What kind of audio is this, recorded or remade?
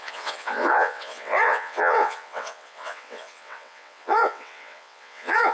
remade